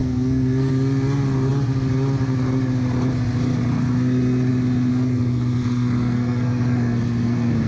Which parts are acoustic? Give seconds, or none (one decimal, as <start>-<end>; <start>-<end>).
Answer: 0.7-4.9